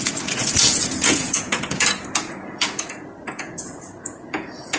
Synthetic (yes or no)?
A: yes